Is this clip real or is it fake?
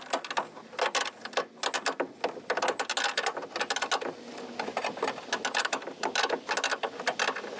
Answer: real